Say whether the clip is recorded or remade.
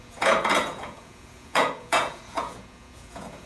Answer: remade